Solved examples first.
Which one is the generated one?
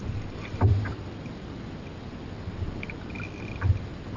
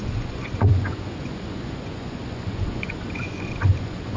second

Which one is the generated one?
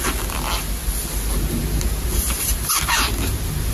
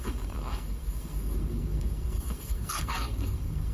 second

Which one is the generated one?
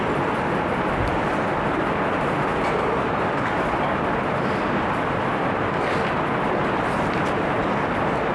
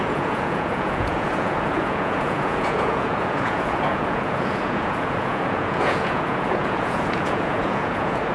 second